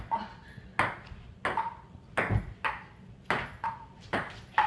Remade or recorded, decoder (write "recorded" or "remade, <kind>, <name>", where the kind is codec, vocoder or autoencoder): recorded